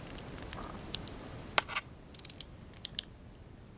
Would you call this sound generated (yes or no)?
no